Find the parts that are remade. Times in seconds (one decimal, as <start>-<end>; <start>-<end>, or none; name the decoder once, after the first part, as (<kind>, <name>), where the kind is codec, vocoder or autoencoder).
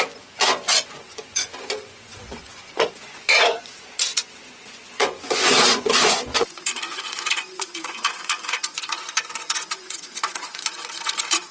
0.0-11.5 (vocoder, Vocos)